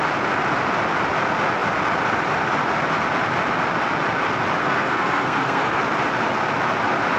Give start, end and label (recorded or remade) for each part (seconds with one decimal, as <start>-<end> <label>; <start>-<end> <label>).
0.0-4.6 recorded; 4.6-5.8 remade; 5.8-7.2 recorded